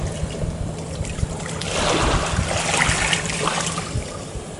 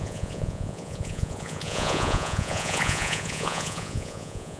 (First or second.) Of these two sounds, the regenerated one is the second